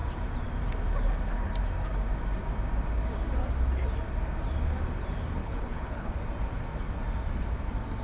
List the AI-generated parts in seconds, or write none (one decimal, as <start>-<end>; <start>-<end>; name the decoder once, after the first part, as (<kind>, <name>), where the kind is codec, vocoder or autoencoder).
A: 5.4-6.1 (codec, HILCodec)